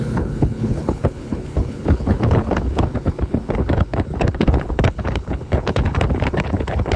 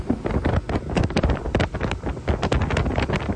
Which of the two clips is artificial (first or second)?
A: first